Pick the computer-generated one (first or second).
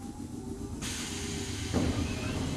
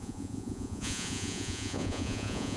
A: second